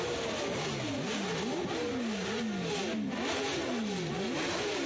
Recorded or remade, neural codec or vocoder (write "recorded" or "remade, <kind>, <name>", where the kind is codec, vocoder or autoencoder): recorded